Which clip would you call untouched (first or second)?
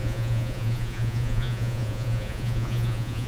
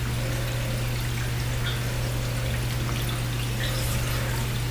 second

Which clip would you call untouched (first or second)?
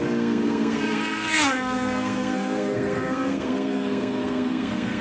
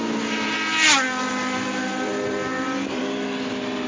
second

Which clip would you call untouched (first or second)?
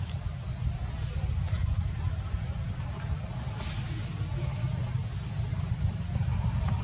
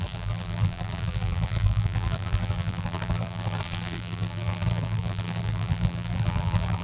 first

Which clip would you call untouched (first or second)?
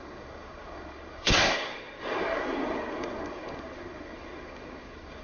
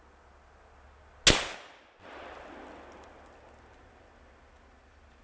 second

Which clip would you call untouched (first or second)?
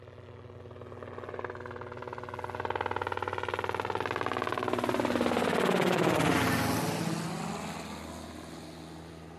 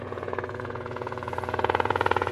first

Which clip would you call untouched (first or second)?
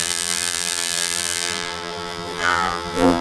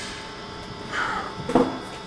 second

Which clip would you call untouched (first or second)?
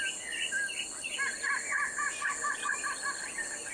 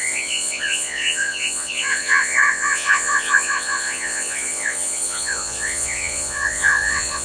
first